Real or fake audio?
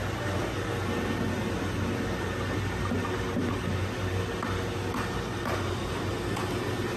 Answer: real